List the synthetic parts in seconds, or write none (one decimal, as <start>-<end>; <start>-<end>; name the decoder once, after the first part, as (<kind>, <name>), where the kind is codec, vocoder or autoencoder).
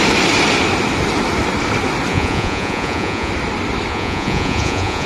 2.1-3.3 (vocoder, Vocos); 3.9-5.1